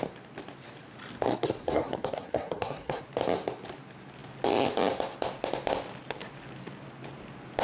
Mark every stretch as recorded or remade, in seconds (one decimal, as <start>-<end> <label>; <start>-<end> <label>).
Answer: 0.0-1.3 recorded; 1.3-3.0 remade; 3.0-7.6 recorded